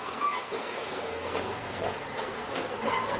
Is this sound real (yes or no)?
no